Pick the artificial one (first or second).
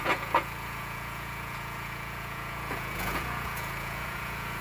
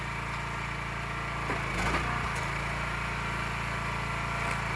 first